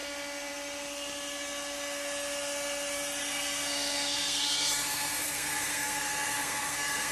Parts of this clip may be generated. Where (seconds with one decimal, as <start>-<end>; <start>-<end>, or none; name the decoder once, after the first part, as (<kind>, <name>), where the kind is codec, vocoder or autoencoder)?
3.2-7.1 (codec, SNAC)